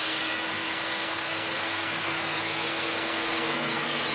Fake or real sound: fake